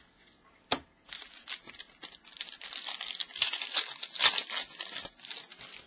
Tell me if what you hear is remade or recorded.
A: recorded